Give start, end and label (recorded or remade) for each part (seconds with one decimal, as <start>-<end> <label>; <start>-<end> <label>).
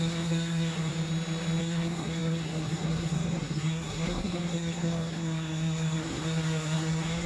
0.0-0.9 remade; 0.9-1.6 recorded; 1.6-7.3 remade